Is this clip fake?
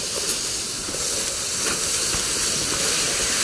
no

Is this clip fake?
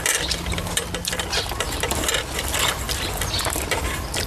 no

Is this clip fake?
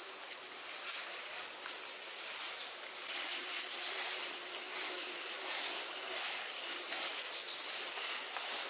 no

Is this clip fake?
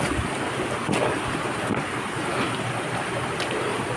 no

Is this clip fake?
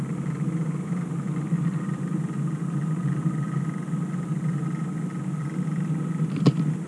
no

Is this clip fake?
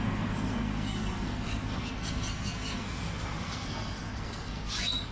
yes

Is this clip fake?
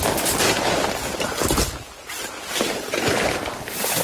no